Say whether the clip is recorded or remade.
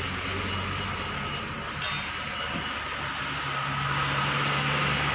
recorded